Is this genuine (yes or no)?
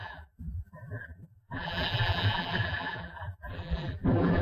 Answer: no